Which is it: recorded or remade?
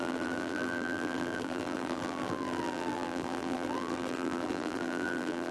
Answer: remade